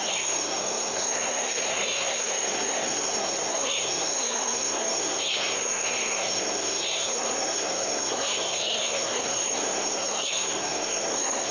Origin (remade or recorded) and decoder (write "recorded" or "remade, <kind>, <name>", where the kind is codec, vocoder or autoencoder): remade, codec, SNAC